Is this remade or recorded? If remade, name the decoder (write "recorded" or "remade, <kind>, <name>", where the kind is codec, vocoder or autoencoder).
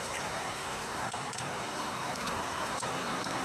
remade, codec, SNAC